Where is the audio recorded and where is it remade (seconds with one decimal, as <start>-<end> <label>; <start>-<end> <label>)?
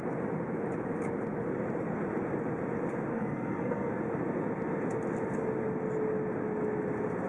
0.0-3.1 recorded; 3.1-3.9 remade; 3.9-7.3 recorded